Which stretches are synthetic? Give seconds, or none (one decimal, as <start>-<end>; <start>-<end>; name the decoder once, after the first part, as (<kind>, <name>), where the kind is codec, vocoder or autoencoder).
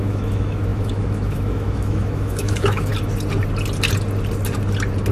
0.0-2.9 (autoencoder, DAC-VAE)